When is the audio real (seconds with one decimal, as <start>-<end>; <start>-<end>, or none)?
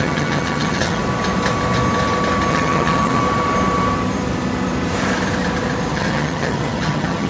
1.0-2.5; 3.2-5.9